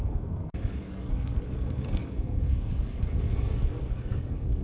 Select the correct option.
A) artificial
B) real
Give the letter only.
A